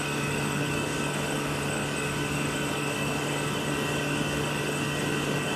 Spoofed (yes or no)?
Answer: yes